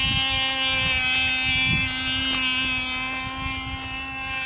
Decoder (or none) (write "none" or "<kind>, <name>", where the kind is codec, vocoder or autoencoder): none